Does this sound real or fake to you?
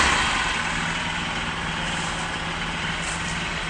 real